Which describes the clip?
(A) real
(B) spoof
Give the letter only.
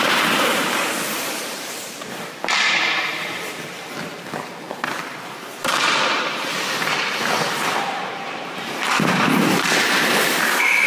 B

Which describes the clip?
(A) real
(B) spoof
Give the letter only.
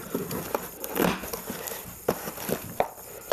B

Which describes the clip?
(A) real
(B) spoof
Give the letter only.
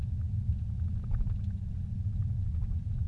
A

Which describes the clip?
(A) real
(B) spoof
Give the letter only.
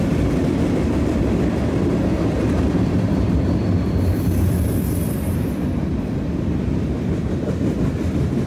A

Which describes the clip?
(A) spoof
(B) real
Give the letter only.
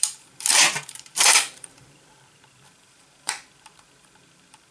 A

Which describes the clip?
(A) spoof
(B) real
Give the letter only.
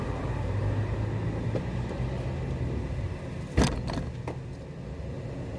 B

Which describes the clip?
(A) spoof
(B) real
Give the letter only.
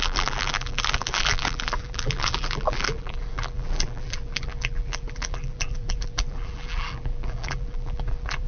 A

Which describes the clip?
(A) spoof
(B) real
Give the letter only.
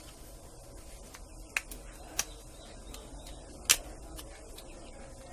B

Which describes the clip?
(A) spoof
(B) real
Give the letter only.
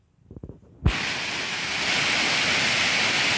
B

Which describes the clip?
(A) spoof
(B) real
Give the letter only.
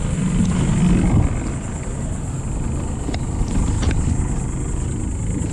B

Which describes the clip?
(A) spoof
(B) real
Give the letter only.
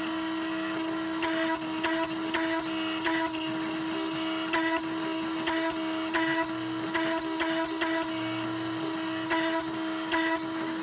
B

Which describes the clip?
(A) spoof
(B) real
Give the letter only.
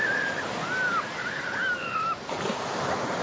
A